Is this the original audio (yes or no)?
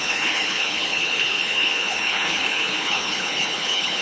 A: no